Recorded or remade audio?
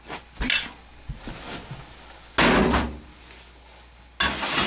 recorded